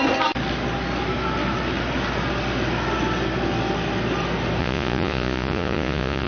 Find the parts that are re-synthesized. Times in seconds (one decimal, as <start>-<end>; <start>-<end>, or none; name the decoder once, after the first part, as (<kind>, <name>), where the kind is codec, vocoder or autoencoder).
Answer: 4.6-6.3 (vocoder, Vocos)